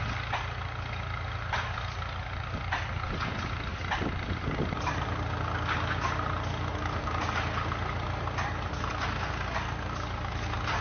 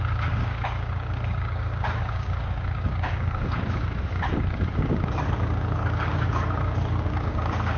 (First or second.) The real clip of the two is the first